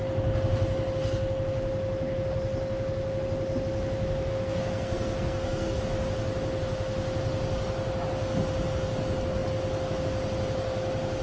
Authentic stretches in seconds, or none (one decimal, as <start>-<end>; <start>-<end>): 0.0-4.3; 5.8-11.2